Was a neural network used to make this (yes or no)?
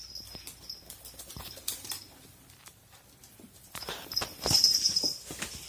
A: yes